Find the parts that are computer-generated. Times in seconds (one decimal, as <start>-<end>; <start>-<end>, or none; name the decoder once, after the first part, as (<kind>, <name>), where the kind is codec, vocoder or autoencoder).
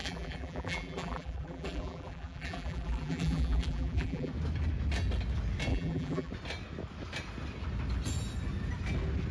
0.0-4.3 (vocoder, BigVGAN v2); 5.7-6.3